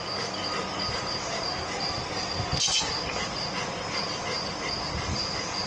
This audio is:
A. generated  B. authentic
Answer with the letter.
B